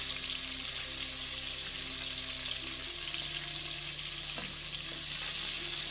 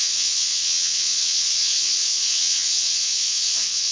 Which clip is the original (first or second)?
first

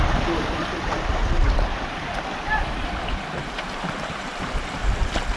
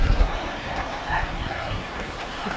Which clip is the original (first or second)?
first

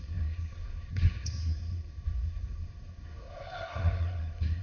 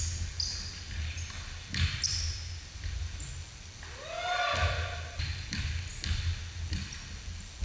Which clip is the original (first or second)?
second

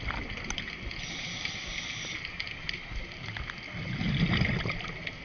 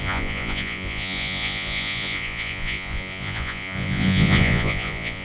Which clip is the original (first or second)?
first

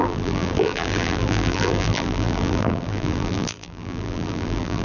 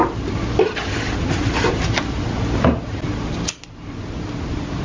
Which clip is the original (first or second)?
second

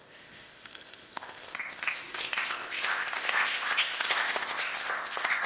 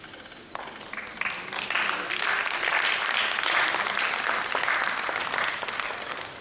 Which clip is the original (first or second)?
second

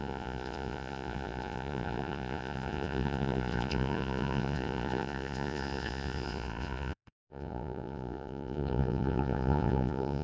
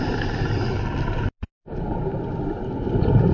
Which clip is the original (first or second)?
second